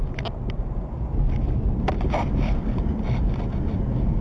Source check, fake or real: real